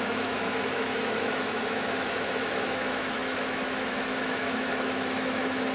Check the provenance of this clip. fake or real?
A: fake